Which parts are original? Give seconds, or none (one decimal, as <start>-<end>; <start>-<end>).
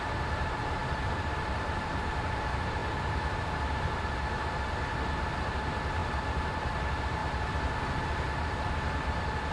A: 2.8-5.3